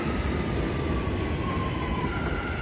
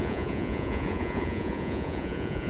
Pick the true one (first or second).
first